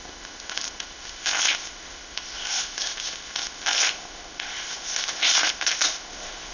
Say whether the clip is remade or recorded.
remade